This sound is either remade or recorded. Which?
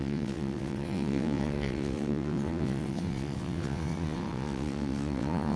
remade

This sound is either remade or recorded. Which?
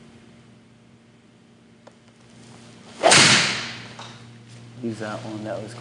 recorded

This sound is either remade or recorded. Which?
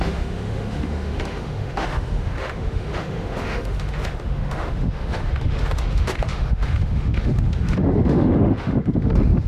remade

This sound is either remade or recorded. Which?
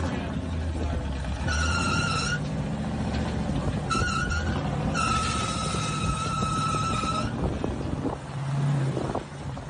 recorded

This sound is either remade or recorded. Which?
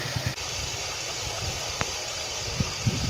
recorded